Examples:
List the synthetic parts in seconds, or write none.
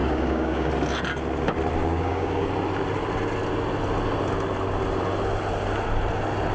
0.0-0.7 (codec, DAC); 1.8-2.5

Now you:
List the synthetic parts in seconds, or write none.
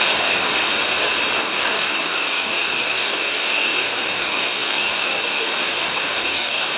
0.0-0.5 (codec, DAC); 1.4-6.8